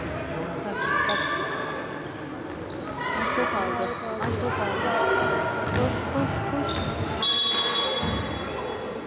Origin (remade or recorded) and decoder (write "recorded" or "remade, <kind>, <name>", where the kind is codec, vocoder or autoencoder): recorded